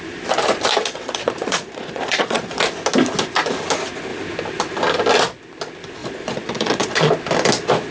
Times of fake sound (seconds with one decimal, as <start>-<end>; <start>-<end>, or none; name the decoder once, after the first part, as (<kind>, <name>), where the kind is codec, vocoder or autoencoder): 0.8-2.6 (vocoder, Vocos); 6.0-7.1